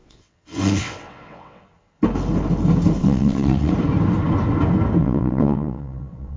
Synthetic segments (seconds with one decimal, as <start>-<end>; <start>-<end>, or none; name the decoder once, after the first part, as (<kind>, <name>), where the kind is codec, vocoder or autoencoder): 0.0-1.6 (vocoder, WaveNeXt); 3.0-3.7; 5.0-6.4